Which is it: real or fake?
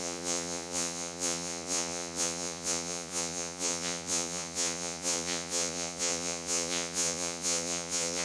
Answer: fake